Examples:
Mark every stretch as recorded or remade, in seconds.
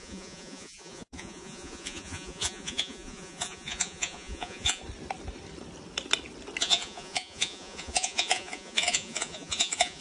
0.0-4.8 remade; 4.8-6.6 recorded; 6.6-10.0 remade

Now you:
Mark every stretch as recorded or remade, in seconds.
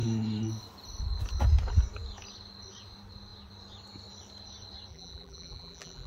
0.0-4.9 recorded; 4.9-6.1 remade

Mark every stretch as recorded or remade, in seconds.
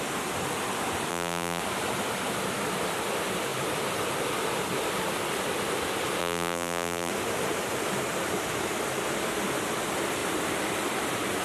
0.0-1.1 recorded; 1.1-1.6 remade; 1.6-6.2 recorded; 6.2-7.1 remade; 7.1-11.4 recorded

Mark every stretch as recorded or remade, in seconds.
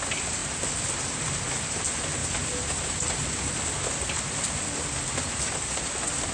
0.0-6.3 recorded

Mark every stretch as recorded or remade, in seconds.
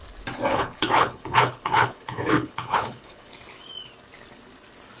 0.0-0.5 recorded; 0.5-3.3 remade; 3.3-5.0 recorded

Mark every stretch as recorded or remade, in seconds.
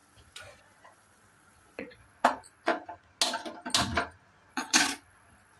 0.0-2.7 remade; 2.7-4.5 recorded; 4.5-5.6 remade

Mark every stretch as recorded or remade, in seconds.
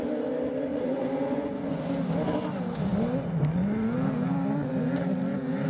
0.0-0.7 recorded; 0.7-1.8 remade; 1.8-5.7 recorded